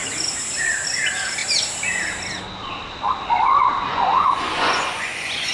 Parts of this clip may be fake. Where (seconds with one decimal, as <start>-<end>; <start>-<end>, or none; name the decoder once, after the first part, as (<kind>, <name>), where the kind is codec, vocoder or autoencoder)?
3.9-5.5 (vocoder, Vocos)